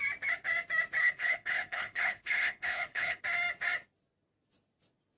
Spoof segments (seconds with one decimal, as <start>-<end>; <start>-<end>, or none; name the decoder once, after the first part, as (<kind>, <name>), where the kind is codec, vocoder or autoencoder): 1.0-3.2 (codec, HILCodec)